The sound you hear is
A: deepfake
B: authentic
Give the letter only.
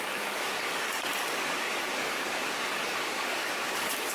A